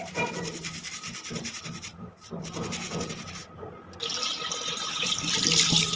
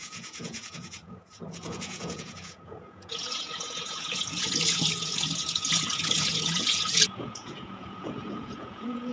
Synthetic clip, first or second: second